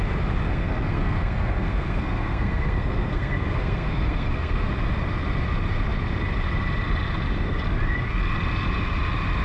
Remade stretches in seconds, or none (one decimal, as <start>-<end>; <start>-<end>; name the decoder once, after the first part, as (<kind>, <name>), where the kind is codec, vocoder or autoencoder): 0.4-4.7 (codec, SNAC)

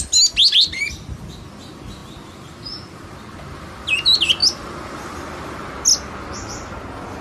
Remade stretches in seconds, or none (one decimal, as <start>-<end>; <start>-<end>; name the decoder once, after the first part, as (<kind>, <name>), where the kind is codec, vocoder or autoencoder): none

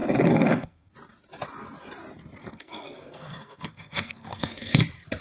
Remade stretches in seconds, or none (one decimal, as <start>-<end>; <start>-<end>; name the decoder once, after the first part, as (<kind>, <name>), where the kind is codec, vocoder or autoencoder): 0.0-0.9 (codec, SNAC); 2.4-4.8

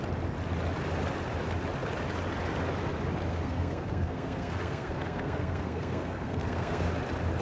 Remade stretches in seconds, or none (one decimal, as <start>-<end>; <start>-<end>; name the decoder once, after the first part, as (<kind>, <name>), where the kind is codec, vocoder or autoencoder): 3.3-6.9 (codec, SNAC)

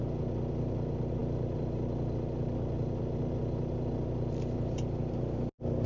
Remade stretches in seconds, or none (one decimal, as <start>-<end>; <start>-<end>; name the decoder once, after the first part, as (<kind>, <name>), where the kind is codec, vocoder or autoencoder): none

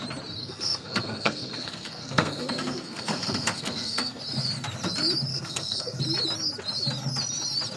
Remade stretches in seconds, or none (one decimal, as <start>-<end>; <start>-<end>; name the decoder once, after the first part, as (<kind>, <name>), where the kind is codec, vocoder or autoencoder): 0.4-4.2 (codec, SNAC); 5.3-6.0